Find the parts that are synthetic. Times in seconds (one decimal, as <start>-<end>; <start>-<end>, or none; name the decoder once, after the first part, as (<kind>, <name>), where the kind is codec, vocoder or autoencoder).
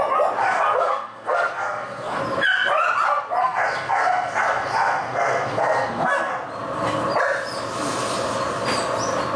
0.4-2.2 (codec, SNAC); 3.4-6.3